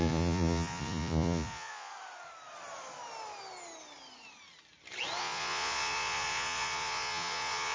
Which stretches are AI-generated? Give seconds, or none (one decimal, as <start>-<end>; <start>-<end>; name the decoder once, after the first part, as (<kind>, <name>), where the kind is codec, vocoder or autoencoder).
0.0-1.9 (vocoder, Vocos); 5.2-7.7